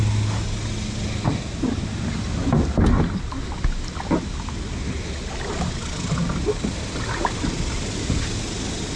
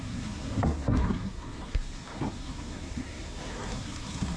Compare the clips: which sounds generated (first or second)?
second